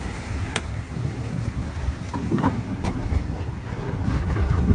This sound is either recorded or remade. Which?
remade